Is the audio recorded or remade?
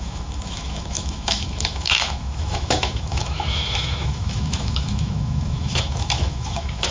remade